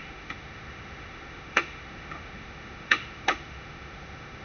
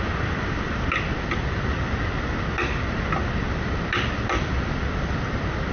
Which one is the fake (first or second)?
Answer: first